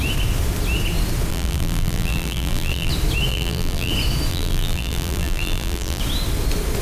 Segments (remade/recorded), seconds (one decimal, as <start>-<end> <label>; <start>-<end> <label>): 0.0-1.3 recorded; 1.3-2.9 remade; 2.9-3.3 recorded; 3.3-3.9 remade; 3.9-4.3 recorded; 4.3-6.0 remade; 6.0-6.8 recorded

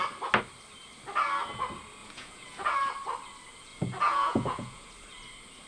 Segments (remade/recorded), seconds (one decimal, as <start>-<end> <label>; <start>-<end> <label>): 0.0-2.0 recorded; 2.0-2.7 remade; 2.7-3.7 recorded; 3.7-4.9 remade; 4.9-5.7 recorded